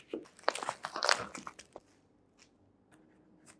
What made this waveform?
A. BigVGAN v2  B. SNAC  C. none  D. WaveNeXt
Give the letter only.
C